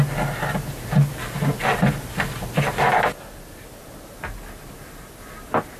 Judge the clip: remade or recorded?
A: recorded